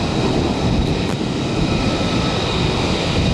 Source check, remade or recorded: recorded